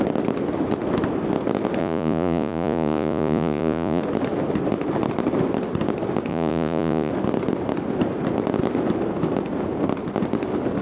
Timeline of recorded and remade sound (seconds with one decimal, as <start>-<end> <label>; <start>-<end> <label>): 0.0-1.8 recorded; 1.8-4.0 remade; 4.0-6.3 recorded; 6.3-7.1 remade; 7.1-10.8 recorded